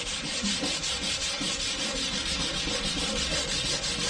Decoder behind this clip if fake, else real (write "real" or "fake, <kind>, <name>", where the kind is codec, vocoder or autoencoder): real